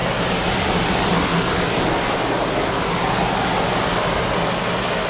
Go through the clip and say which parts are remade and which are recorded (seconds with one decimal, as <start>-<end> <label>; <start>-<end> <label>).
0.0-5.1 recorded